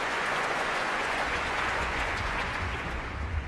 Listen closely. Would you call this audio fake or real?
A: fake